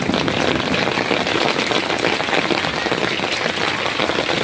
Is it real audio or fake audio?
real